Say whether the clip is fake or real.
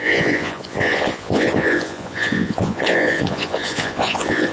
fake